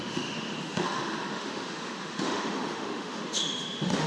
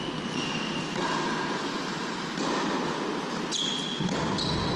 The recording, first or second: second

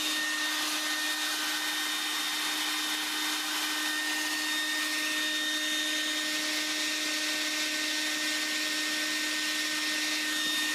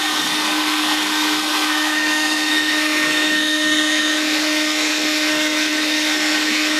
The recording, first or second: first